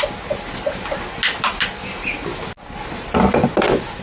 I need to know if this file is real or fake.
real